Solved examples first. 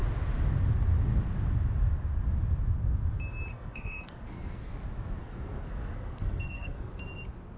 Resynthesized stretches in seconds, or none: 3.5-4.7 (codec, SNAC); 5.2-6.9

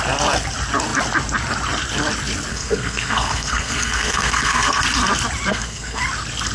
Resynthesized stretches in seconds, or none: 2.5-4.8 (codec, SNAC); 5.5-6.0